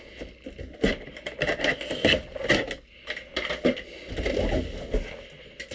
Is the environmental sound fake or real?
real